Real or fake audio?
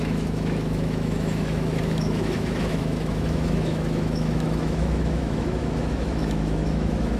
fake